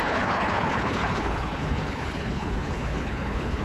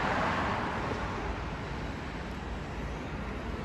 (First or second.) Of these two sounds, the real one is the second